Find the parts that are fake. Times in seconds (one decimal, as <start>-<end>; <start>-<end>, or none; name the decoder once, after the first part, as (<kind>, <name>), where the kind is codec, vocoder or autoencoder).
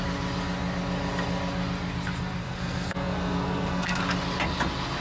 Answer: 2.4-4.0 (codec, SNAC)